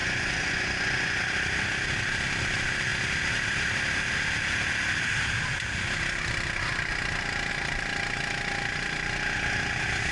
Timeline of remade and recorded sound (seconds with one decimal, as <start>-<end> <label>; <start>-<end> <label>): 0.0-1.2 remade; 1.2-10.1 recorded